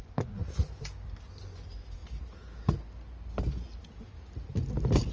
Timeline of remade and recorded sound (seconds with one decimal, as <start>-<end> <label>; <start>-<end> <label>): 0.0-0.4 remade; 0.4-1.4 recorded; 1.4-2.0 remade; 2.0-5.1 recorded